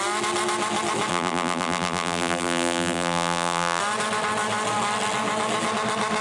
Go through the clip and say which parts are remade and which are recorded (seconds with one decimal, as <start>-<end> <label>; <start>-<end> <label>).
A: 0.0-1.1 recorded; 1.1-3.8 remade; 3.8-6.2 recorded